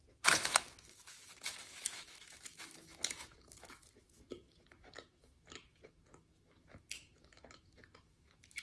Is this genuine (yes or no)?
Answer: no